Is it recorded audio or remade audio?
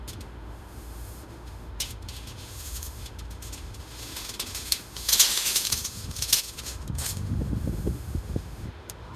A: remade